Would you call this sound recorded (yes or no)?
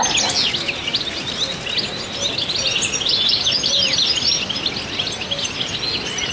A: yes